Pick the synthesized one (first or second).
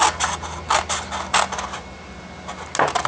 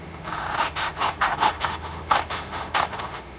second